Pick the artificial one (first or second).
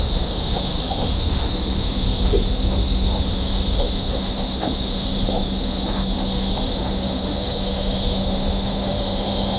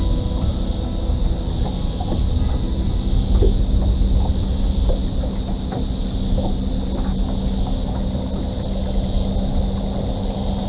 first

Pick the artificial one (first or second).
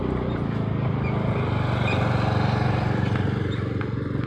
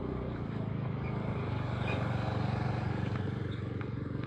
second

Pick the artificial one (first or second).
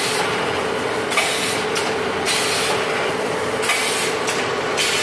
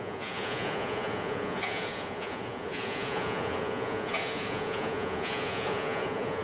second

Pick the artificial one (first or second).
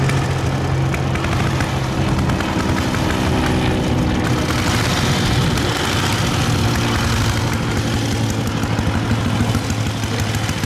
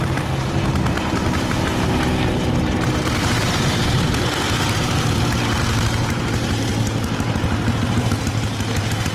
second